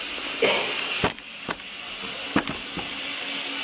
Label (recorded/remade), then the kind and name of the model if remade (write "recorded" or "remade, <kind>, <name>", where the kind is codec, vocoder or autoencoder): recorded